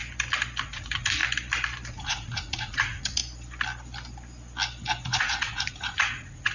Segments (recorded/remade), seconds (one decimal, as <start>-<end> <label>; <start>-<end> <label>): 0.0-0.6 recorded; 0.6-1.2 remade; 1.2-1.9 recorded; 1.9-3.2 remade; 3.2-5.0 recorded; 5.0-6.5 remade